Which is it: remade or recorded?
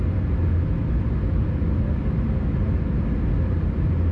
recorded